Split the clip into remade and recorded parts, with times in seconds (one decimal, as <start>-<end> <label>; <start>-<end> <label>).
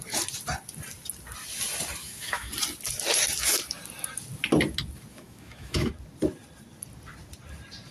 0.0-2.0 recorded; 2.0-2.5 remade; 2.5-5.1 recorded; 5.1-5.9 remade; 5.9-7.9 recorded